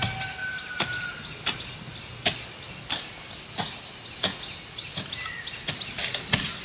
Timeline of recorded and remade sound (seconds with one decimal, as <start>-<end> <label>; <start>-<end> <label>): 0.0-0.4 recorded; 0.4-1.1 remade; 1.1-6.6 recorded

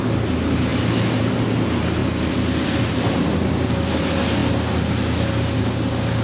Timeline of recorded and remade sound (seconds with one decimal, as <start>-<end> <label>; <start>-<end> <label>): 0.0-2.0 recorded; 2.0-3.6 remade; 3.6-6.2 recorded

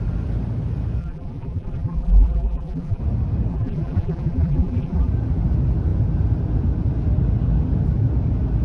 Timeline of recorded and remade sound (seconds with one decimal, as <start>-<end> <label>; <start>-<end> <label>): 0.0-1.0 recorded; 1.0-3.0 remade; 3.0-3.5 recorded; 3.5-5.1 remade; 5.1-8.6 recorded

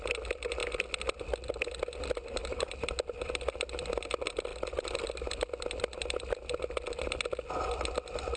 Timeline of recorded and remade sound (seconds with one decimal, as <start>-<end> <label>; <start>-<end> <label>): 0.0-2.4 recorded; 2.4-2.9 remade; 2.9-4.5 recorded; 4.5-5.0 remade; 5.0-8.4 recorded

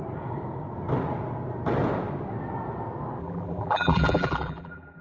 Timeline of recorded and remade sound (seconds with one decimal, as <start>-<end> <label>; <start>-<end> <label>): 0.0-3.2 recorded; 3.2-5.0 remade

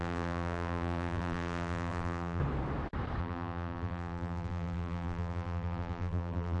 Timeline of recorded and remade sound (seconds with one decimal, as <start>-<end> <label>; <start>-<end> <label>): 0.0-2.4 remade; 2.4-3.2 recorded; 3.2-6.6 remade